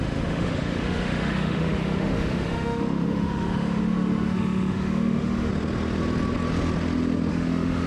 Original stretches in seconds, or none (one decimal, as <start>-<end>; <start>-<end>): 5.5-7.3